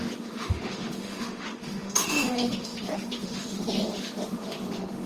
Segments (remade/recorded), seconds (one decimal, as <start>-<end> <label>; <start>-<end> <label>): 0.0-5.1 remade